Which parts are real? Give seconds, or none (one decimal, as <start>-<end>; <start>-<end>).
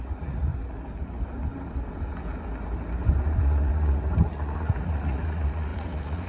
0.5-3.2